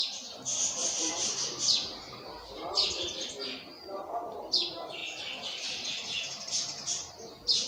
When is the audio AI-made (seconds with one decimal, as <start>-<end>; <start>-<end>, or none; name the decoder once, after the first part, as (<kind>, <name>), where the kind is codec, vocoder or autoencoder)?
0.8-2.9 (vocoder, BigVGAN v2)